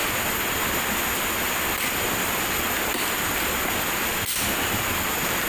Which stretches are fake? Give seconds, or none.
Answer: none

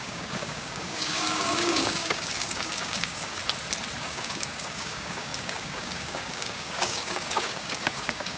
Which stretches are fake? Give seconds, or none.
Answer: 0.0-3.4 (codec, DAC); 4.0-8.4